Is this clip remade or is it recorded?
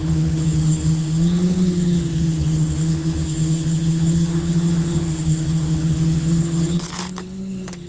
remade